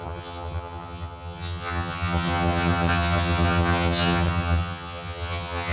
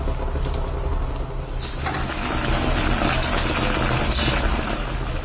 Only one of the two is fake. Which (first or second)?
first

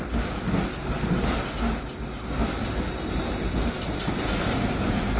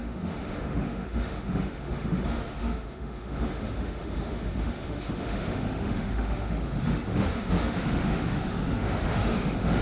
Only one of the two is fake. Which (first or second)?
second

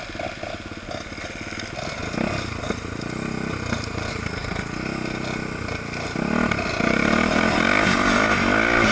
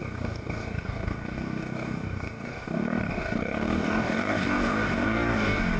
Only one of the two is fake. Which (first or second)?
second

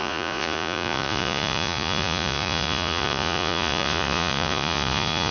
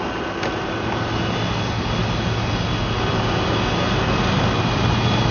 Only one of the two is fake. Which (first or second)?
first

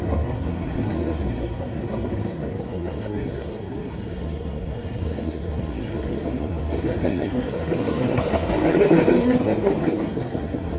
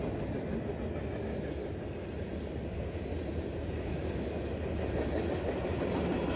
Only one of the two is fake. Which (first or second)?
first